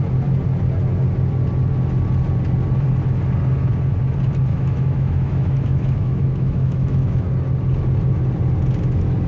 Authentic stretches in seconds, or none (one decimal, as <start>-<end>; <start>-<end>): 0.0-4.5; 7.2-9.3